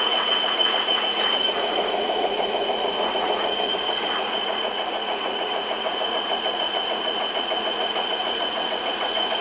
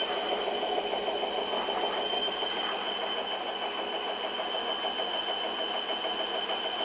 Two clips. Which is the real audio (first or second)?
second